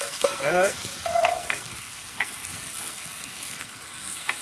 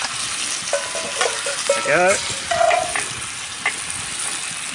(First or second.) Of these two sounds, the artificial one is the first